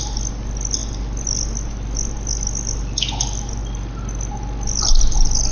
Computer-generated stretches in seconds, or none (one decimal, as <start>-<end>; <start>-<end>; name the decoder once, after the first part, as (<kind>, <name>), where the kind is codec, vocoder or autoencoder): none